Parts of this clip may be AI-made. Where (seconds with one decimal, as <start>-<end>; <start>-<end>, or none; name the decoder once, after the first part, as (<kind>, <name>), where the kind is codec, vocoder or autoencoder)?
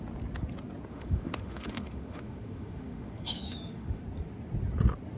0.9-4.0 (autoencoder, DAC-VAE)